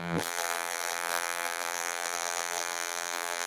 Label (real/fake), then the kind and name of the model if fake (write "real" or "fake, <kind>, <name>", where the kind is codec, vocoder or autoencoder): fake, vocoder, BigVGAN v2